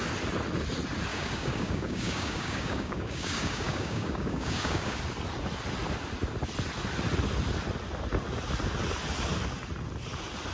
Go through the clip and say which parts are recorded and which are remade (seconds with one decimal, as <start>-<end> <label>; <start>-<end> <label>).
0.0-1.1 recorded; 1.1-5.0 remade; 5.0-10.5 recorded